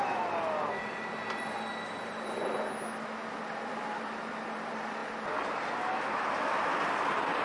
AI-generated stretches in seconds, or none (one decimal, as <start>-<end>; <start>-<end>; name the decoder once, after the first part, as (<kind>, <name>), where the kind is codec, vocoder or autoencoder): none